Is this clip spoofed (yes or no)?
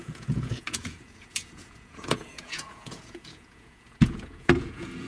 yes